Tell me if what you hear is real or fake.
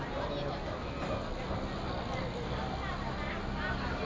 real